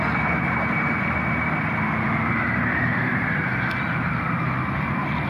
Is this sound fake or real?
real